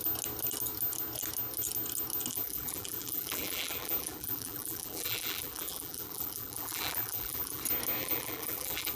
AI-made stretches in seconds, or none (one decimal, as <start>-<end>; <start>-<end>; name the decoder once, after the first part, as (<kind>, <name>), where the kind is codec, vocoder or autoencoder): 2.3-7.6 (vocoder, BigVGAN v2); 8.0-9.0